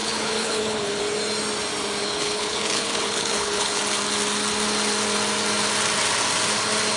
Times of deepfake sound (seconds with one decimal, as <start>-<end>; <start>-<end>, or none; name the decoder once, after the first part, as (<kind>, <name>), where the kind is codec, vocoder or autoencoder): 0.0-1.0 (codec, HILCodec); 2.0-3.8